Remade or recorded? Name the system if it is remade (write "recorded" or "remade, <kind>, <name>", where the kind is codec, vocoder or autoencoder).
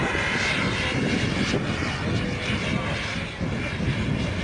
recorded